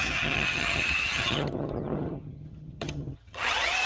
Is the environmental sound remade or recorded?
remade